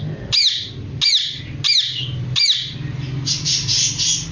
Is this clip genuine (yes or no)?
yes